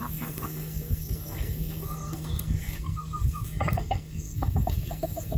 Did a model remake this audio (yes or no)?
yes